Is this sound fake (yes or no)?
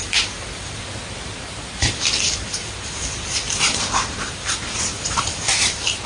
yes